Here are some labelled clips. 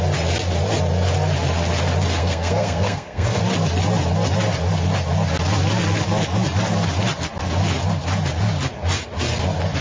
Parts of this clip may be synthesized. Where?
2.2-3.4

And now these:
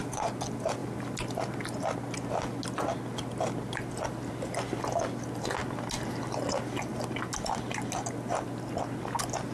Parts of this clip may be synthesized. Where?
none

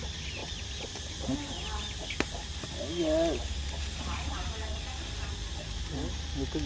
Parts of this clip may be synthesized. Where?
none

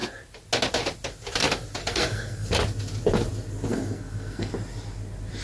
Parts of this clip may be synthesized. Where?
1.8-2.5; 3.7-4.5

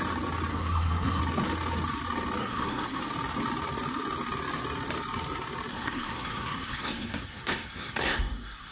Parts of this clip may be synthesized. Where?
0.5-1.2; 2.4-3.0; 5.7-8.7

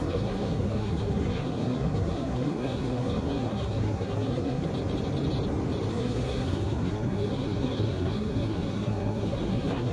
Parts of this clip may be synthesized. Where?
0.0-4.7; 5.9-9.9